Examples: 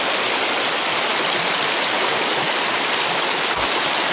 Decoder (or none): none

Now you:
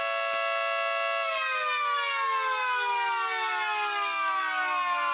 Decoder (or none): none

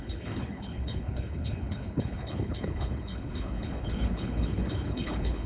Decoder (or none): codec, HILCodec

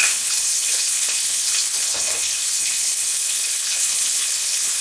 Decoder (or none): codec, HILCodec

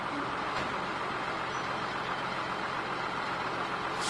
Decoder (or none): none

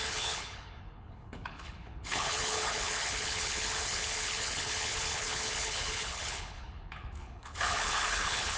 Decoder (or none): codec, HILCodec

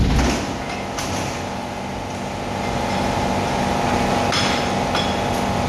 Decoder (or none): none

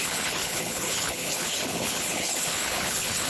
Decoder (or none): codec, HILCodec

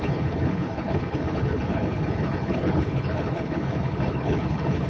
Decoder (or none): codec, HILCodec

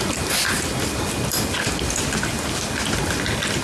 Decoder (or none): none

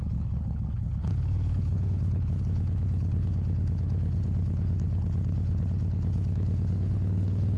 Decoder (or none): codec, HILCodec